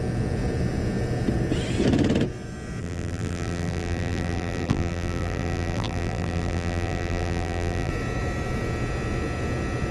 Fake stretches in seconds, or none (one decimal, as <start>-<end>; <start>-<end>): 2.8-7.9